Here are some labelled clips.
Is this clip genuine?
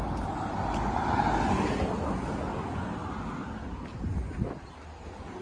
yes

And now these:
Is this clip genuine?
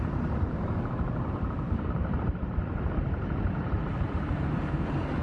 no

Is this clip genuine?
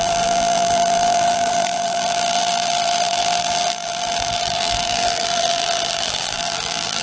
no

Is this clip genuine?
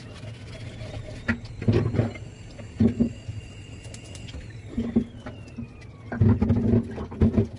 yes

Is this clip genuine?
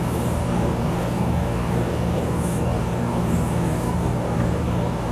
no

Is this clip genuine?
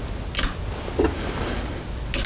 yes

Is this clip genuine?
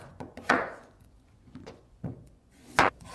no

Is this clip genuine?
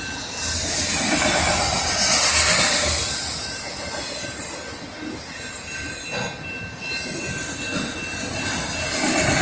yes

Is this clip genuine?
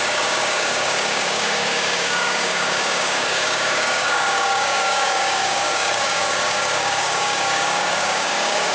no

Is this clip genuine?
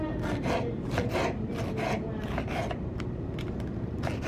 yes